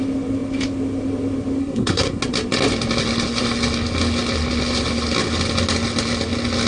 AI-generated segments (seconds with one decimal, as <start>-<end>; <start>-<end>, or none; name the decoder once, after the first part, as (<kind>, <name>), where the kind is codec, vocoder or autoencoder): 1.6-2.2 (codec, SNAC)